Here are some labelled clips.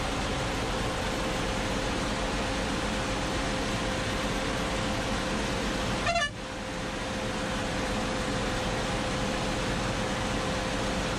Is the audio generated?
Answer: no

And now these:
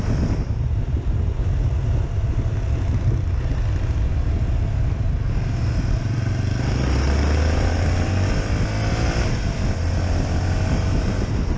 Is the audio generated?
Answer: no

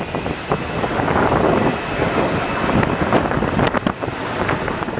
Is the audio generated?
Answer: yes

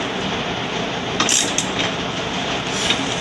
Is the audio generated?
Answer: yes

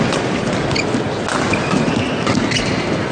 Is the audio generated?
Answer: no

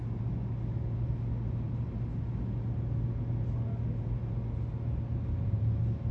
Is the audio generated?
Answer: no